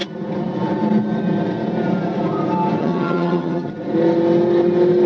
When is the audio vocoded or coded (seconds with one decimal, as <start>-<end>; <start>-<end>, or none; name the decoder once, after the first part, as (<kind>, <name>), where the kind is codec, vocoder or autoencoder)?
2.8-3.7 (vocoder, HiFi-GAN)

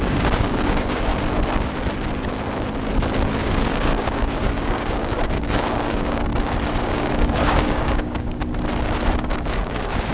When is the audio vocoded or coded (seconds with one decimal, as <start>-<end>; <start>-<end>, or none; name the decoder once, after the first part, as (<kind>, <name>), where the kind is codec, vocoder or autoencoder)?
0.0-1.1 (codec, DAC); 3.4-6.3; 6.8-8.4; 9.2-10.1